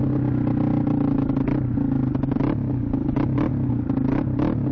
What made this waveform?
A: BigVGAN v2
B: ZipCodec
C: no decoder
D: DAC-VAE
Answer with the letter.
C